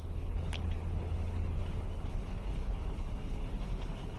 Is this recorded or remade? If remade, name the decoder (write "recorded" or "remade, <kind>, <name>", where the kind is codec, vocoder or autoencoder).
remade, codec, HILCodec